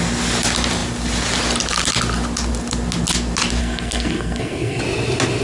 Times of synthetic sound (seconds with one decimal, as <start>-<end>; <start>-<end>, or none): 3.6-4.8